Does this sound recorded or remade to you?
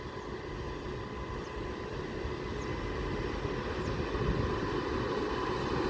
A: recorded